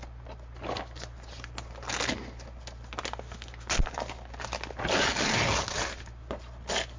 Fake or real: real